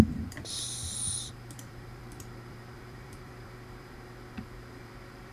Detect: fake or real fake